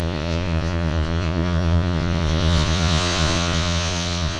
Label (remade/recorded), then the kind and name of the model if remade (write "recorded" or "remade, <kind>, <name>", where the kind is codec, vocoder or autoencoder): remade, vocoder, Vocos